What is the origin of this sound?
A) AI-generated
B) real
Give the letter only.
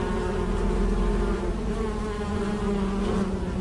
B